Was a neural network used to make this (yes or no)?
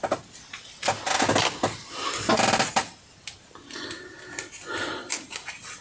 no